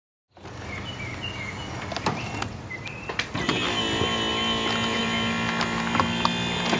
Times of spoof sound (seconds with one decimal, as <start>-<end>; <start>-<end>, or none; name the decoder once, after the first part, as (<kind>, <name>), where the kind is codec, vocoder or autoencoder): none